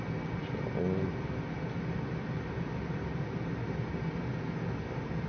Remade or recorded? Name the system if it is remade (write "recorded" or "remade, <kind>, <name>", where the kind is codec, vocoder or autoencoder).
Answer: recorded